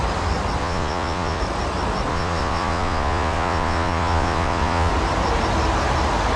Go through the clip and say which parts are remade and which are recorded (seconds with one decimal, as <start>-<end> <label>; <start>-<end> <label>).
0.0-0.6 recorded; 0.6-1.4 remade; 1.4-2.1 recorded; 2.1-4.9 remade; 4.9-6.4 recorded